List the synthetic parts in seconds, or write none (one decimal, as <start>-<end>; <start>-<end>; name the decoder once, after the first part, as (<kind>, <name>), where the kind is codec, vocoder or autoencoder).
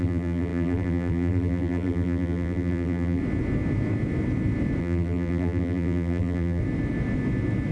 0.0-3.2 (vocoder, BigVGAN v2); 4.8-6.6